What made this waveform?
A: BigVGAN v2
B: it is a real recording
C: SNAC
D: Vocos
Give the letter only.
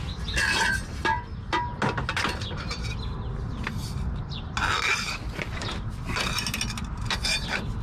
B